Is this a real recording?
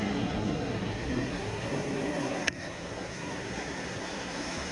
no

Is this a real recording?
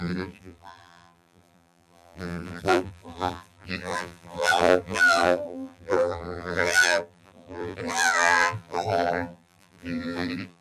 no